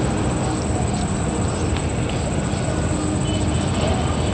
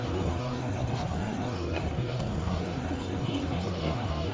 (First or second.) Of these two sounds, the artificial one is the second